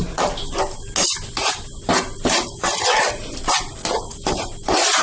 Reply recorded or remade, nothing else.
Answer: recorded